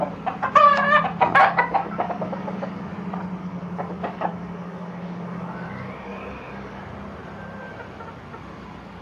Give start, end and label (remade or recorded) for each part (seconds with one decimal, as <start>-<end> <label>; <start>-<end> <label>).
0.0-1.4 recorded; 1.4-2.9 remade; 2.9-3.4 recorded; 3.4-6.8 remade; 6.8-9.0 recorded